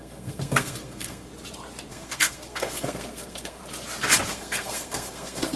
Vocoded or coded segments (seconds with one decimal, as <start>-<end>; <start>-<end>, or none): 0.0-1.3; 1.9-3.6; 4.3-5.6